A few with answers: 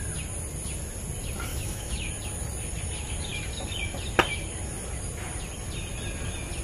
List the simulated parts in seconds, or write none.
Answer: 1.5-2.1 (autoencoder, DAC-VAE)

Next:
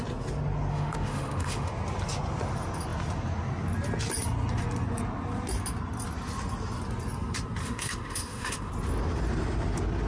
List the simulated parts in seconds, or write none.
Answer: 0.7-1.7 (autoencoder, DAC-VAE); 7.6-8.7

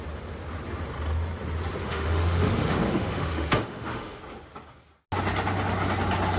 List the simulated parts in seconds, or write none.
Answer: 1.8-4.2 (autoencoder, DAC-VAE)

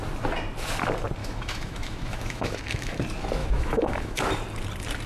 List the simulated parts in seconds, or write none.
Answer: 1.2-3.0 (autoencoder, DAC-VAE); 3.4-4.2

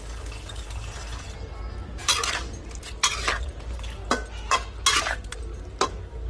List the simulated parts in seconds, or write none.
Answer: none

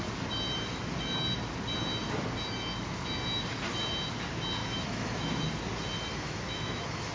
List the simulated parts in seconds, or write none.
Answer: 4.6-5.4 (autoencoder, DAC-VAE); 6.1-7.1

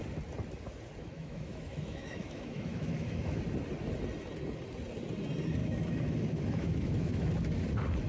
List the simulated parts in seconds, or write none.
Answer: 1.0-3.4 (autoencoder, DAC-VAE); 5.6-7.3